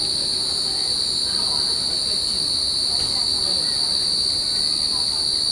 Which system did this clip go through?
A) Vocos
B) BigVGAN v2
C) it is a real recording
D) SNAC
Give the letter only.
C